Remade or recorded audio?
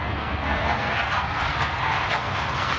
remade